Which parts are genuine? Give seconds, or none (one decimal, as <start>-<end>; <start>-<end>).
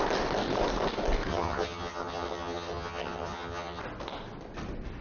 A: 0.0-1.3; 3.8-5.0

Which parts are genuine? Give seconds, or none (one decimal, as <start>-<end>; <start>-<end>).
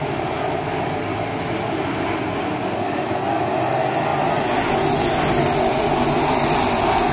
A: 0.0-7.1